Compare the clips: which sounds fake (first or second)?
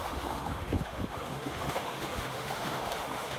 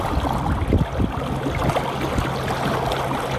first